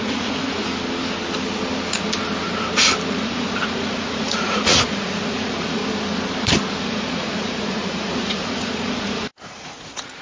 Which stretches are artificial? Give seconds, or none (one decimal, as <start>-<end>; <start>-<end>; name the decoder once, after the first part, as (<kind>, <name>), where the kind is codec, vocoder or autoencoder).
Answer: 0.0-0.6 (vocoder, Vocos); 3.1-5.8; 6.8-10.2